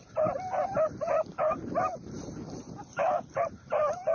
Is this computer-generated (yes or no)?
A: no